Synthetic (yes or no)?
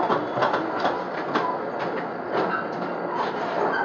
no